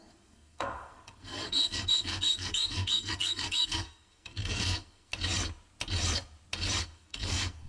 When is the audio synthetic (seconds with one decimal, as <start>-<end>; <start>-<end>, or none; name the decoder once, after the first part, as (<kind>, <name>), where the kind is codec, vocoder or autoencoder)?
0.0-5.1 (codec, SNAC); 6.8-7.7